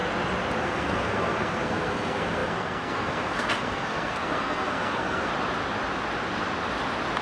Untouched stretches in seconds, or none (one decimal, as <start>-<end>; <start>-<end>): 0.0-0.6; 5.3-7.2